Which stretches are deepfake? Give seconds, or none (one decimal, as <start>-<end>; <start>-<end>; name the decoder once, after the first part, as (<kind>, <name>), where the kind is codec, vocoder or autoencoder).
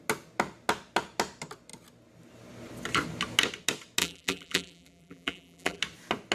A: 4.0-5.8 (vocoder, BigVGAN v2)